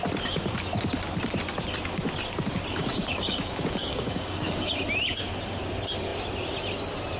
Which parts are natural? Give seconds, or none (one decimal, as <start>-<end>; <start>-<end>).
0.0-2.7; 4.7-7.2